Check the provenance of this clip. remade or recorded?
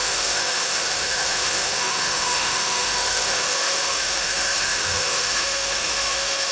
remade